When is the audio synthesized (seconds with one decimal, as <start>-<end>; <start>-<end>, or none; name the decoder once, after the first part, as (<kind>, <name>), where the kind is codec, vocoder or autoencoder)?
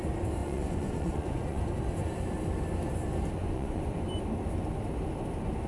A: 0.4-1.6 (vocoder, Vocos); 3.4-4.1